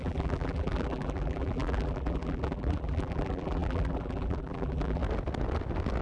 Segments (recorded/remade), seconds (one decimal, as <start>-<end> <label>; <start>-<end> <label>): 0.0-5.0 remade; 5.0-6.0 recorded